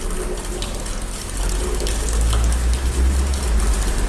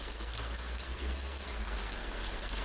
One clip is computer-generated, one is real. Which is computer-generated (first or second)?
second